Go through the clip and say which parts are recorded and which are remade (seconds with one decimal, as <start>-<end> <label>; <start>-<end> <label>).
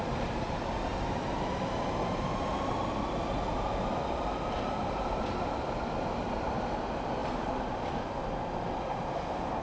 0.0-9.6 recorded